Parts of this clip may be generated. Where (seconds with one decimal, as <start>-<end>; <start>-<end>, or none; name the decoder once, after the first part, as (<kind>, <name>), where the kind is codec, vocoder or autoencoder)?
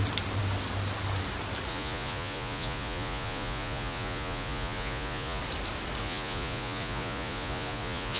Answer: 1.7-5.4 (vocoder, Vocos); 6.0-8.2